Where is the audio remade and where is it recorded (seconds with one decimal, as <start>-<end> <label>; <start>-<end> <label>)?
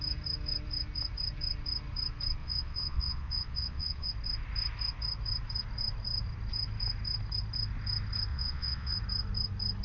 0.0-2.4 recorded; 2.4-4.1 remade; 4.1-8.3 recorded; 8.3-9.0 remade; 9.0-9.8 recorded